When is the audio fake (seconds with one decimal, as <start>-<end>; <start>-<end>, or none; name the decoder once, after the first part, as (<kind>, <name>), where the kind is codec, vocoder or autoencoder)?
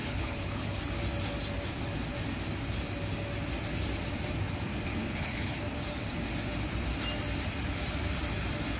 0.0-0.8 (codec, HILCodec); 5.0-5.6